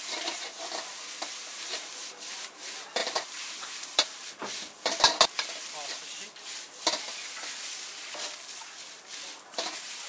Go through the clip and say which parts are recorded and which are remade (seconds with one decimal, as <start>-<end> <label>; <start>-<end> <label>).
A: 0.0-3.0 recorded; 3.0-4.3 remade; 4.3-10.1 recorded